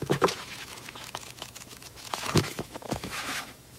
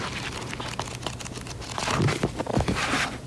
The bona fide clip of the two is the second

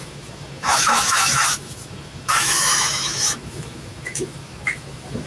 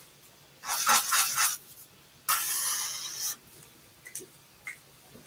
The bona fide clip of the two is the second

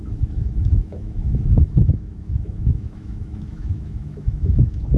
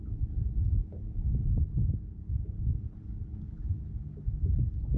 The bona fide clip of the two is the second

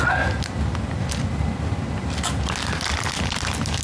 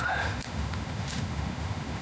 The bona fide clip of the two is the first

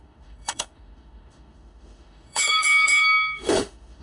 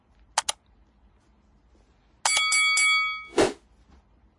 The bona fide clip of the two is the second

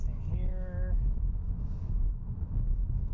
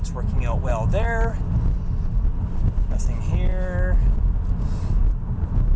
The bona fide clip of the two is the second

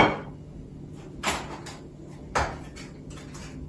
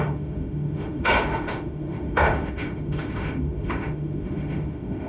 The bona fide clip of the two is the first